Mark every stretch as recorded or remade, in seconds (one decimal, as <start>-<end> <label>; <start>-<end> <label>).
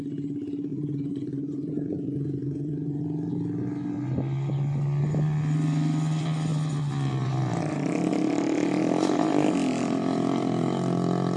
0.0-0.7 recorded; 0.7-3.0 remade; 3.0-11.4 recorded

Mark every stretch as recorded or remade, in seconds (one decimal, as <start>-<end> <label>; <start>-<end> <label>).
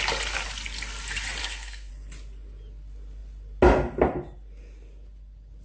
0.0-1.4 recorded; 1.4-1.9 remade; 1.9-5.6 recorded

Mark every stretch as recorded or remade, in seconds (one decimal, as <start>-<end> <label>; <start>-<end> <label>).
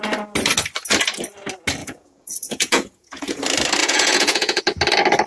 0.0-1.8 recorded; 1.8-3.4 remade; 3.4-3.8 recorded; 3.8-4.6 remade; 4.6-5.3 recorded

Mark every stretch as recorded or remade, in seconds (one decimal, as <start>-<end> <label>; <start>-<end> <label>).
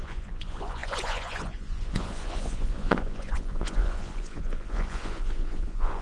0.0-6.0 remade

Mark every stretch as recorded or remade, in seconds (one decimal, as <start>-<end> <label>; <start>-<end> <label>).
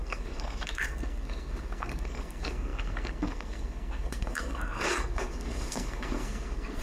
0.0-6.8 remade